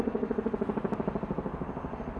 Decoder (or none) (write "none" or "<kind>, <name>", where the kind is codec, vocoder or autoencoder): none